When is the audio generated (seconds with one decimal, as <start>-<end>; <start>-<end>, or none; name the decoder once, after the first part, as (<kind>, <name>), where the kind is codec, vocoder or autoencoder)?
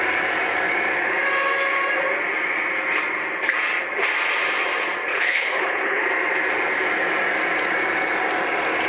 5.1-6.0 (codec, HILCodec)